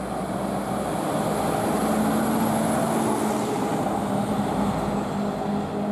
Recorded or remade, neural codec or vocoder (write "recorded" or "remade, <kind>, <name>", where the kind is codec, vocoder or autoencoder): recorded